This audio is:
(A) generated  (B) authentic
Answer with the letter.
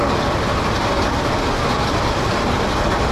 B